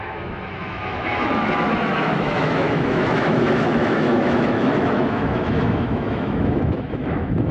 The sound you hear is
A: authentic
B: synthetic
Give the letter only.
B